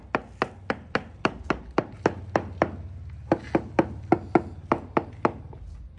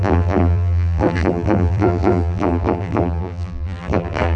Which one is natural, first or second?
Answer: first